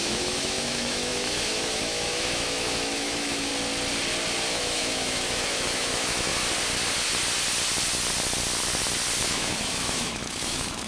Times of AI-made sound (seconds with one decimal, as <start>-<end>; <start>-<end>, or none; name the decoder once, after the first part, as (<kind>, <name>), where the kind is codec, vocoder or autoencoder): 0.0-3.5 (autoencoder, DAC-VAE); 4.5-6.3; 9.2-10.9